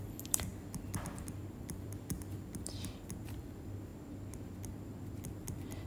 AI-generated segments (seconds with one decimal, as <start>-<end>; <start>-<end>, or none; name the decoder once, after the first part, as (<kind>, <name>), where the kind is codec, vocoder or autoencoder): 0.0-3.9 (vocoder, BigVGAN v2); 4.7-5.9